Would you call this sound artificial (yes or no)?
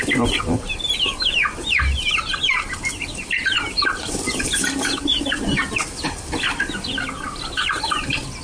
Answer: no